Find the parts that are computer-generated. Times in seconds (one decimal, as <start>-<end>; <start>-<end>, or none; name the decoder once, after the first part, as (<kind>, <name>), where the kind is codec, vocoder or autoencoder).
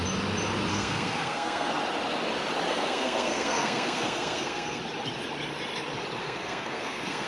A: 0.7-1.7 (codec, SNAC); 2.7-4.8; 6.2-7.3